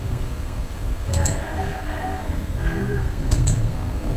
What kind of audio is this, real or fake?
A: fake